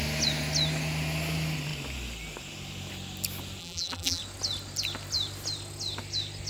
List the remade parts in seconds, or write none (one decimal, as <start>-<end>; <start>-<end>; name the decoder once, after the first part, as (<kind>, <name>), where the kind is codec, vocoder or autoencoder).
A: 3.6-4.2 (vocoder, BigVGAN v2)